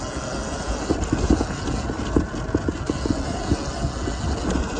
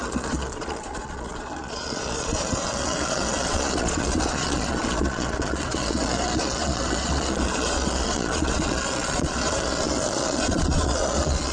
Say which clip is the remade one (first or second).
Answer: second